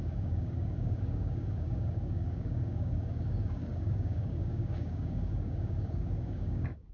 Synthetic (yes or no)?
yes